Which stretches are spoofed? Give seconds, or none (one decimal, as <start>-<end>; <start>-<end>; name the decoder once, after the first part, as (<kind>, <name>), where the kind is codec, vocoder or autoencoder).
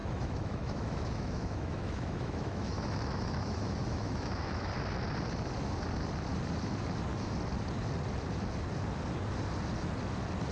0.0-4.7 (autoencoder, DAC-VAE)